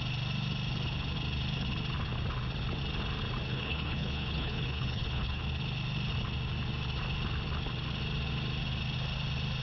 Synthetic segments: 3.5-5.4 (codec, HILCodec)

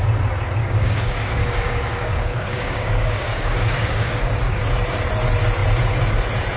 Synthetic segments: 0.6-4.6 (codec, DAC)

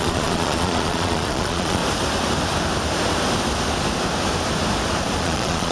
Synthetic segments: 0.0-1.8 (vocoder, Vocos); 5.2-5.7

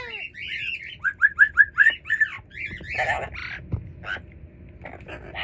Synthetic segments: none

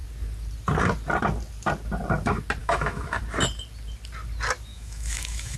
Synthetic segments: 2.6-3.2 (autoencoder, DAC-VAE); 4.7-5.6

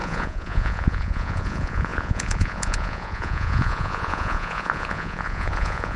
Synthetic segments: 0.0-6.0 (vocoder, Vocos)

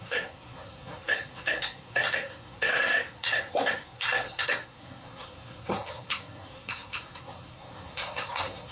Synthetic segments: 0.0-8.7 (codec, SNAC)